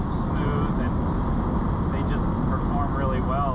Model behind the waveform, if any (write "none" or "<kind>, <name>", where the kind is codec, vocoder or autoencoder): none